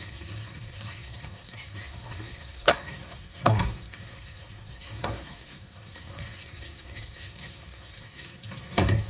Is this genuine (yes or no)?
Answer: no